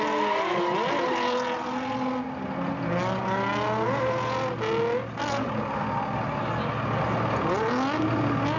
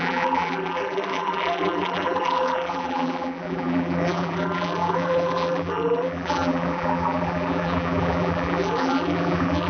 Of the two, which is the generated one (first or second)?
second